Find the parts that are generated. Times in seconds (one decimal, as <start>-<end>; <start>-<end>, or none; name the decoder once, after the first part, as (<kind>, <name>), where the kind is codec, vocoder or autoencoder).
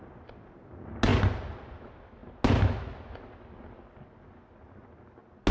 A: none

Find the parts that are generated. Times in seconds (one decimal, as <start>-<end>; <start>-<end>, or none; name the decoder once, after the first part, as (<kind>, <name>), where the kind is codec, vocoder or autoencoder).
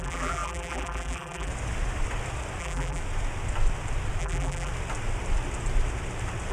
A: 0.0-1.5 (vocoder, BigVGAN v2); 2.6-3.0; 4.2-4.7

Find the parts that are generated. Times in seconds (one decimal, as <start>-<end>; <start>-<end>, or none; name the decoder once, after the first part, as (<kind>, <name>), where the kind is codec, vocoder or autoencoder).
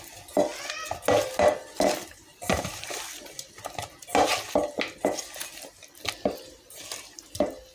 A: 2.3-3.0 (vocoder, BigVGAN v2)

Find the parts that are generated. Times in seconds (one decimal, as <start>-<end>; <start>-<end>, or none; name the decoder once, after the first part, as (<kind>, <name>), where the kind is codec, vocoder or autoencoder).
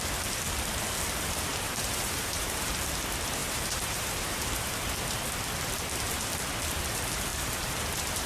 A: 1.5-2.7 (vocoder, BigVGAN v2); 3.4-4.7; 7.3-8.3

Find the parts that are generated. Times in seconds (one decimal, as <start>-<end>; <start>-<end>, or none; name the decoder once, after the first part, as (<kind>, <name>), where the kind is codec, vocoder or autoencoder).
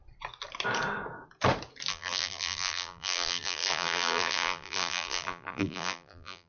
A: 1.9-6.5 (vocoder, BigVGAN v2)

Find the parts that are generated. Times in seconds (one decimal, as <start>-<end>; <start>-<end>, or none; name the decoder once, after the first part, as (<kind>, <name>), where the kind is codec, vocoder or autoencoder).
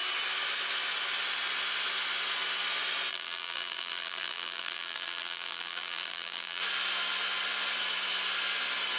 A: 3.1-6.6 (vocoder, BigVGAN v2)